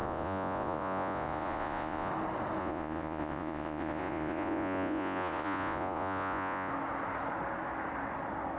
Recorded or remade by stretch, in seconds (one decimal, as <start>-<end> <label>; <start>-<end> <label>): 0.0-2.1 remade; 2.1-2.6 recorded; 2.6-6.7 remade; 6.7-8.6 recorded